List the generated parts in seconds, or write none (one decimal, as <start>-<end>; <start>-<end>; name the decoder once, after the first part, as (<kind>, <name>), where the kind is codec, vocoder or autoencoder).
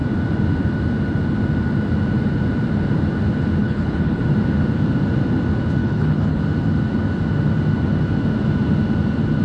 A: 3.6-4.2 (codec, HILCodec); 5.8-6.4